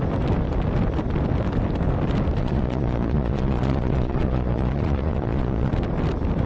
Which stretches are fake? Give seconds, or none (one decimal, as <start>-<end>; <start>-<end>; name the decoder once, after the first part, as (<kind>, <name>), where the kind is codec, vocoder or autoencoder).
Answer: 2.4-5.7 (vocoder, Vocos)